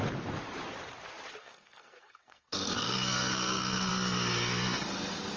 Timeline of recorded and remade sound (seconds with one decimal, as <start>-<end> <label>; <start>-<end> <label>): 0.0-1.4 recorded; 1.4-3.9 remade; 3.9-5.4 recorded